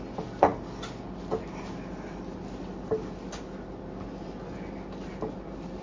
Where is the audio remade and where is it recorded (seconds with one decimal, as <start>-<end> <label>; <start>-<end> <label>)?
0.0-5.8 recorded